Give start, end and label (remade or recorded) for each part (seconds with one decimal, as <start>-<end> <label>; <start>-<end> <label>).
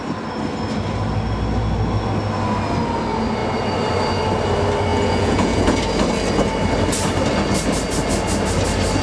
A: 0.0-4.9 recorded; 4.9-5.8 remade; 5.8-9.0 recorded